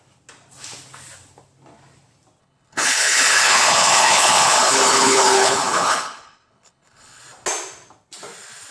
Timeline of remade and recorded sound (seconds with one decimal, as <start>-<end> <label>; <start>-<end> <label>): 0.0-2.4 recorded; 2.4-7.2 remade; 7.2-8.7 recorded